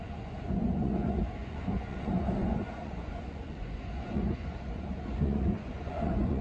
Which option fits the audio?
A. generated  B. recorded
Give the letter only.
A